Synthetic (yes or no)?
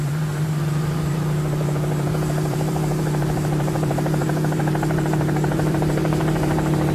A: yes